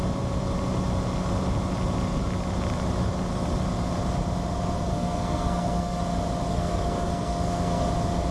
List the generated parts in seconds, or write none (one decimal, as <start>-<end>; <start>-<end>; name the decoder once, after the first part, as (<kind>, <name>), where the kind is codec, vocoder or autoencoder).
4.9-6.0 (codec, SNAC); 6.5-7.9